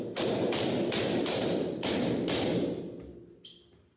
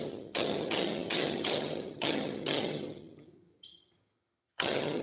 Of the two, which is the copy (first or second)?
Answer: second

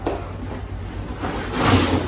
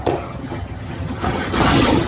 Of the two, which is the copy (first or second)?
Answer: second